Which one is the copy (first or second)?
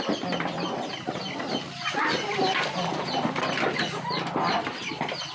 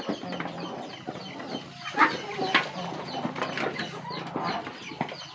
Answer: first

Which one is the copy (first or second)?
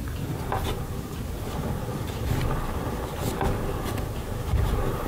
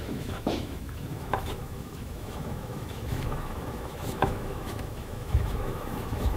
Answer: second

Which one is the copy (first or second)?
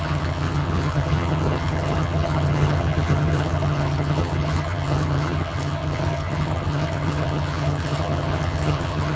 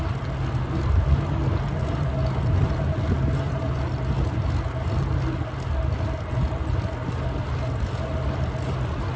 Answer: first